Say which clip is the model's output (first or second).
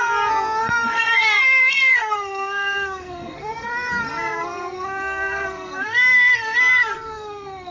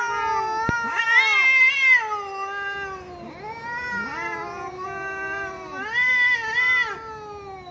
first